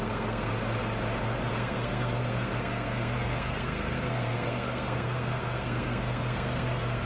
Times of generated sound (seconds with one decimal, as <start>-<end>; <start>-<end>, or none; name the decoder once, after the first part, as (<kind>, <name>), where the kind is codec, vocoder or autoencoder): 0.0-0.5 (codec, SNAC); 1.5-7.1